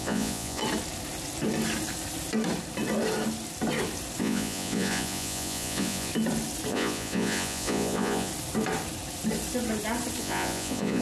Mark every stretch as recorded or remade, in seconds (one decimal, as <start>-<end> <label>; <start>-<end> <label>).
0.0-0.6 remade; 0.6-4.2 recorded; 4.2-6.1 remade; 6.1-6.7 recorded; 6.7-8.3 remade; 8.3-10.2 recorded; 10.2-11.0 remade